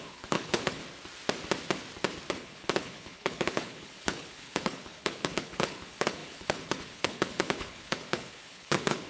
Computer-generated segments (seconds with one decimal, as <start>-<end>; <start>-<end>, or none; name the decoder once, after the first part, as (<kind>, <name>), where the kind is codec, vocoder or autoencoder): 0.0-0.8 (codec, HILCodec); 2.3-9.1